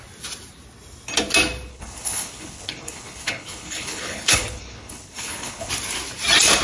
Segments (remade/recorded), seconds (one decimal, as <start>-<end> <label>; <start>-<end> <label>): 0.0-1.7 recorded; 1.7-5.7 remade; 5.7-6.6 recorded